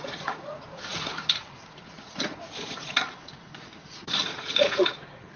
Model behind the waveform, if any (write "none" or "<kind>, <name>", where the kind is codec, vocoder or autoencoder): vocoder, Vocos